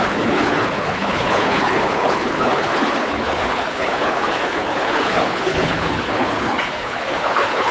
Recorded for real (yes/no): no